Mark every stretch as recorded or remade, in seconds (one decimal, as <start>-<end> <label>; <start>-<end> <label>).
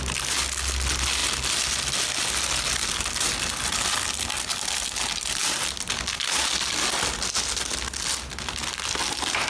0.0-9.5 recorded